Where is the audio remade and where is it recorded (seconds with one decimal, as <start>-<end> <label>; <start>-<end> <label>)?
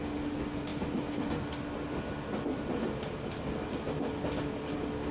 0.0-5.1 recorded